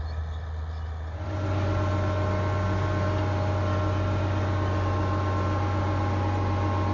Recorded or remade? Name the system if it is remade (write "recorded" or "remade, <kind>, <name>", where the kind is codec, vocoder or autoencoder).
recorded